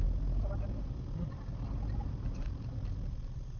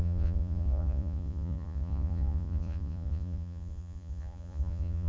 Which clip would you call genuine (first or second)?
first